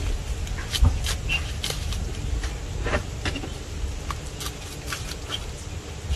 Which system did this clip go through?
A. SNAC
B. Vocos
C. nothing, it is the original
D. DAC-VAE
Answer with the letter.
C